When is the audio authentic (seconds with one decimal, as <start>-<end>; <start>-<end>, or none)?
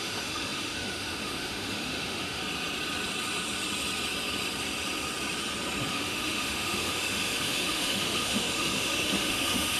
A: 2.4-5.9